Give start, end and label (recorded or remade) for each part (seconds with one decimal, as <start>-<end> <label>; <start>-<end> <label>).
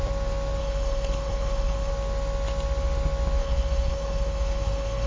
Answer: 0.0-0.6 recorded; 0.6-1.9 remade; 1.9-3.4 recorded; 3.4-5.1 remade